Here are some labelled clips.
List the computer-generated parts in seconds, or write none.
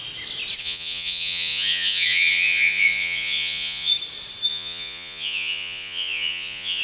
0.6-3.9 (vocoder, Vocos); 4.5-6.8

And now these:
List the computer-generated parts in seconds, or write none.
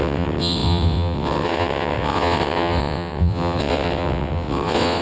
0.0-5.0 (vocoder, WaveNeXt)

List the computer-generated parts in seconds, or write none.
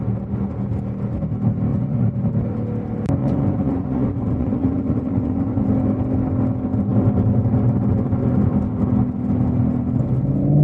1.7-2.3 (vocoder, Vocos); 3.2-5.6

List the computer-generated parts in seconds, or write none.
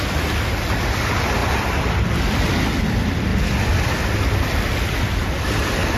none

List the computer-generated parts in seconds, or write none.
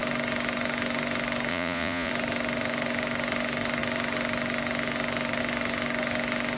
1.5-2.1 (vocoder, Vocos)